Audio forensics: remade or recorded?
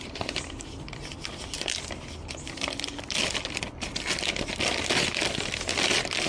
recorded